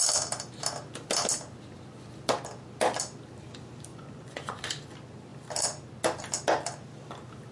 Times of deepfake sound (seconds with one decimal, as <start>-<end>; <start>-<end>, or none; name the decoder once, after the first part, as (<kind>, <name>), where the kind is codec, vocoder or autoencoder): 3.9-4.6 (vocoder, Vocos)